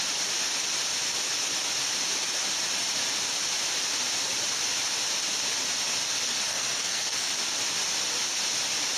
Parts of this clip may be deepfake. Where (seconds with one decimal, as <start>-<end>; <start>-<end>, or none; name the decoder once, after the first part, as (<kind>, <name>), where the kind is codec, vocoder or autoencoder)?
6.5-7.3 (codec, SNAC)